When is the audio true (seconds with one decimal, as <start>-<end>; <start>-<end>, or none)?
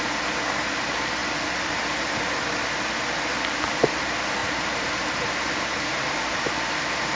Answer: 0.0-4.4; 6.5-7.2